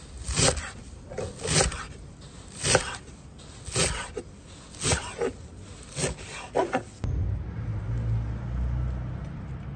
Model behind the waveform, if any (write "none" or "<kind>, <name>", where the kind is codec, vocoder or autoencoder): none